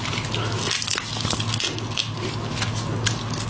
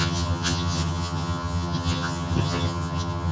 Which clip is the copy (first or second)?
second